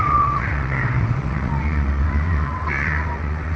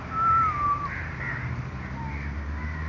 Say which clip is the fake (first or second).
first